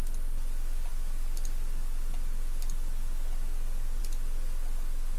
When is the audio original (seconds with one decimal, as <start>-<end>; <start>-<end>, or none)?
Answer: 0.0-5.2